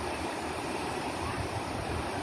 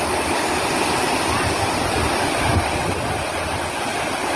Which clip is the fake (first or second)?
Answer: first